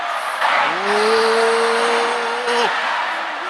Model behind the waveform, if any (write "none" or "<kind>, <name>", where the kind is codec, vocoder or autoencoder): none